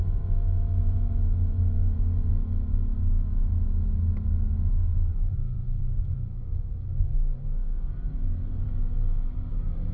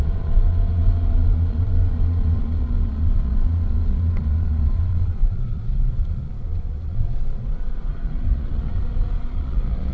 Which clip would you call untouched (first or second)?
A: first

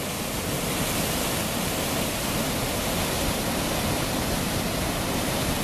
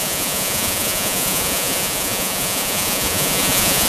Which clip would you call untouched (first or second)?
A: first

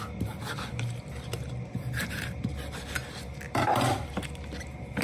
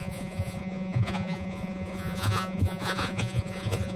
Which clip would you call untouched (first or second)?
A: first